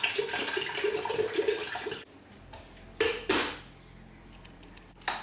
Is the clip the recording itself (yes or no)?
yes